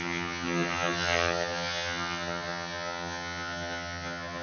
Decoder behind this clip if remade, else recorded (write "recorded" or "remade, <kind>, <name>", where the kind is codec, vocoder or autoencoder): remade, vocoder, HiFi-GAN